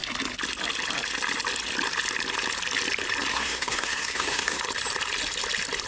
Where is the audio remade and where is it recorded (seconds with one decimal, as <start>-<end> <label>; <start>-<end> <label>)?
0.0-3.3 recorded; 3.3-4.6 remade; 4.6-5.9 recorded